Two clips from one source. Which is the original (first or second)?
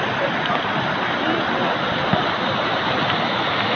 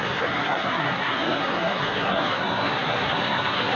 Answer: first